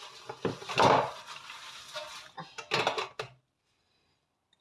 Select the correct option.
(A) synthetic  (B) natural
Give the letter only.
B